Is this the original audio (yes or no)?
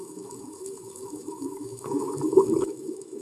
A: no